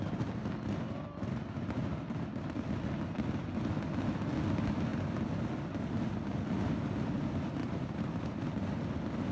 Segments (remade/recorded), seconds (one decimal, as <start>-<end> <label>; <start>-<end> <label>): 0.0-7.6 recorded; 7.6-8.4 remade; 8.4-9.3 recorded